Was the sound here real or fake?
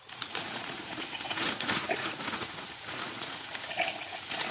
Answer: fake